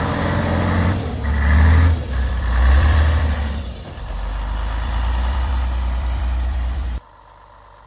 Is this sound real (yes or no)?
no